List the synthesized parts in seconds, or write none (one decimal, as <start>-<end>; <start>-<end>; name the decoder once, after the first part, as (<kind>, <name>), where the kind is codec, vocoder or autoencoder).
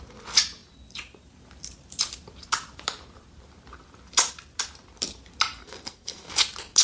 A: 5.6-6.3 (codec, SNAC)